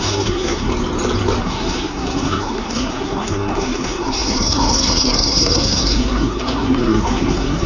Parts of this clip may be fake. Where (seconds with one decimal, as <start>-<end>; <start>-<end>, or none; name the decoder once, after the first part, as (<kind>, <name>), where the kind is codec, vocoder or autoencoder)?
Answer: 0.0-0.7 (codec, SNAC); 1.4-7.7